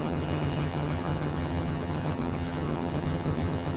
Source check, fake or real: fake